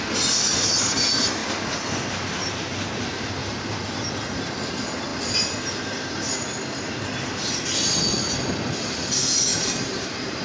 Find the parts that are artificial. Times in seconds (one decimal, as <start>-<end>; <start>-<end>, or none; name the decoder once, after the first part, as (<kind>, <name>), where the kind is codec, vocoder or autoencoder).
3.4-4.1 (vocoder, BigVGAN v2); 9.5-10.4